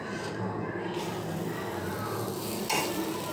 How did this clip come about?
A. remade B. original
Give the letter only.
B